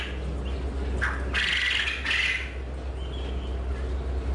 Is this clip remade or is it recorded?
recorded